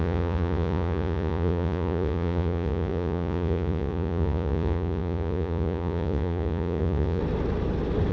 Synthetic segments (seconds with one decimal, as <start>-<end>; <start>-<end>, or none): 0.0-7.2